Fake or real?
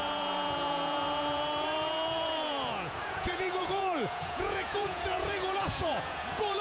fake